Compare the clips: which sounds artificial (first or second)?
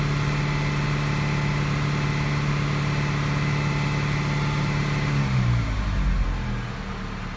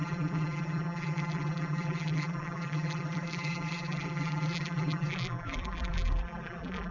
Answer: second